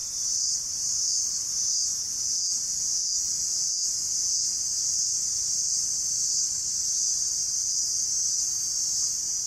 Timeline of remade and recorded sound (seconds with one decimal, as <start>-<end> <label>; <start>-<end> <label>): 0.0-1.9 remade; 1.9-4.3 recorded; 4.3-7.4 remade; 7.4-8.4 recorded; 8.4-9.5 remade